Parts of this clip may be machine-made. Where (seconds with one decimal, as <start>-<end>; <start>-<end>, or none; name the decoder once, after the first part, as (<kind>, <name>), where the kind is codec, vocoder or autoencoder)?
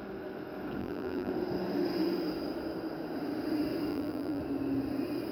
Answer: 0.8-1.3 (vocoder, BigVGAN v2); 3.9-4.4